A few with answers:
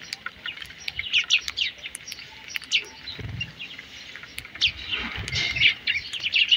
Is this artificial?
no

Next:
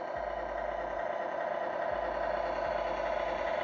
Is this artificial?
no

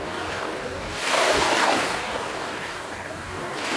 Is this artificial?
yes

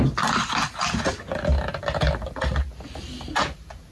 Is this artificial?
no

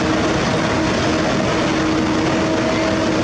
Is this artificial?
no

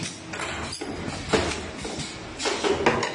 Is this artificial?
no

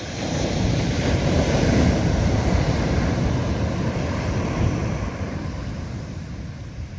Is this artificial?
yes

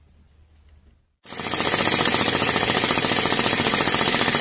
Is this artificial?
no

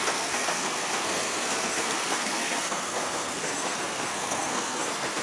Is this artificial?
yes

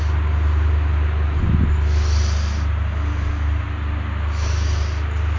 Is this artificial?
no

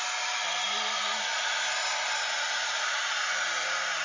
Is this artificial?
no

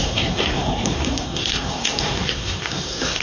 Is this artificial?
yes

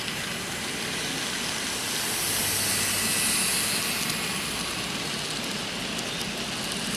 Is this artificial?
no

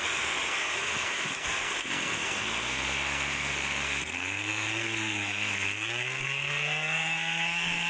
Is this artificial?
yes